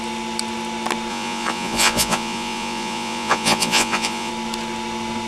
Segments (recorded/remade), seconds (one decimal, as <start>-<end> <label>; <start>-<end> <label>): 0.0-1.1 recorded; 1.1-4.3 remade; 4.3-5.3 recorded